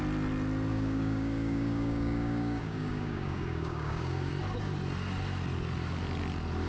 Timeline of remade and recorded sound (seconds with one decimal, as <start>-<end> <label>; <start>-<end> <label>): 0.0-0.7 recorded; 0.7-4.3 remade; 4.3-6.7 recorded